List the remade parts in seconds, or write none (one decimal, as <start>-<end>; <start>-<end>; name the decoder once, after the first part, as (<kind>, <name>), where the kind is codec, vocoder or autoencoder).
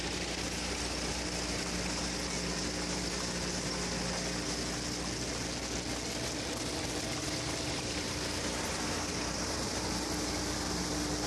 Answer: 7.2-9.7 (vocoder, BigVGAN v2)